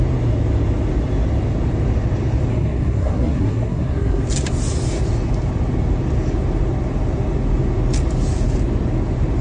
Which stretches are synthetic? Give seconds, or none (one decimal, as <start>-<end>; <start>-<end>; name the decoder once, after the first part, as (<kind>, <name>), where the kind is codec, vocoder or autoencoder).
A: 2.5-4.2 (codec, SNAC)